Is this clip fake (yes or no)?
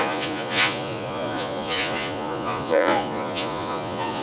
yes